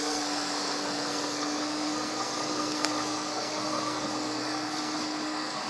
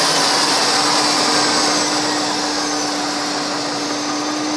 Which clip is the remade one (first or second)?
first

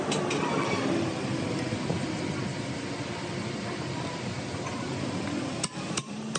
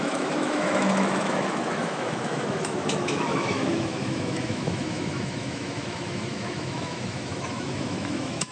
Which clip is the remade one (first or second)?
second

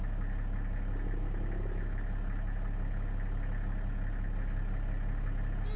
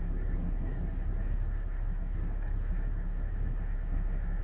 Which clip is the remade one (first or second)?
second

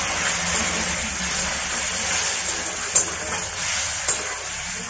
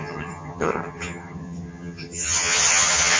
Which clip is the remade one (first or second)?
second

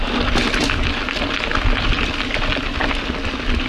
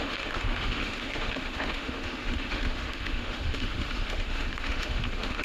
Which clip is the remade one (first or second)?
second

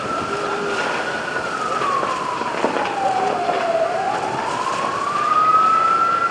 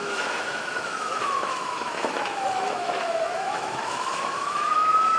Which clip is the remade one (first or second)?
second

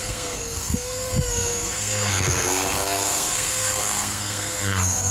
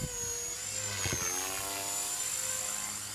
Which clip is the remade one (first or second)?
first